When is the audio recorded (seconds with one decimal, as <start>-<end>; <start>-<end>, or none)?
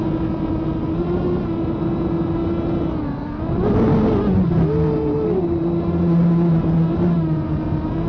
0.0-8.1